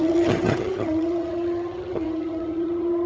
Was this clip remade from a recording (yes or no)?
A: yes